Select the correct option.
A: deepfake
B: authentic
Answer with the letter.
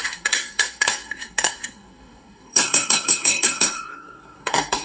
A